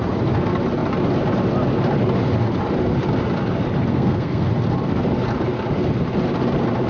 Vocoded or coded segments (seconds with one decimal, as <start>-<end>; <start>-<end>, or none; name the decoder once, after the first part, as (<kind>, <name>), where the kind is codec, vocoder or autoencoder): 3.9-4.5 (codec, SNAC)